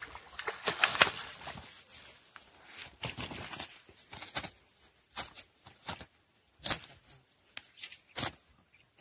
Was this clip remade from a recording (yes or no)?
no